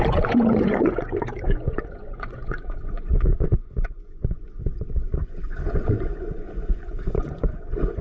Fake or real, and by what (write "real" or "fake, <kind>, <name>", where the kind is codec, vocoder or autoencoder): fake, vocoder, Vocos